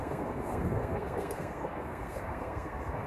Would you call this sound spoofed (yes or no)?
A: yes